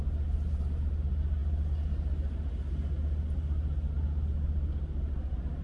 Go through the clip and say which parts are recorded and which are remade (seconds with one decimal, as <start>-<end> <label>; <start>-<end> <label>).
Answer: 0.0-5.6 recorded